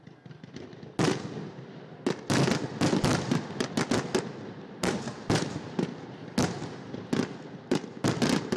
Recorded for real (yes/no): yes